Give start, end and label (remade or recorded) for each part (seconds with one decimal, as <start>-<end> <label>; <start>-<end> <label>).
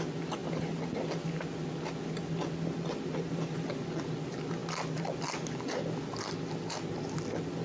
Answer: 0.0-7.6 recorded